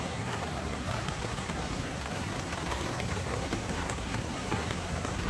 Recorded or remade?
remade